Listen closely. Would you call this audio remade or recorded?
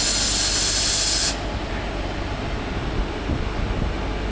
recorded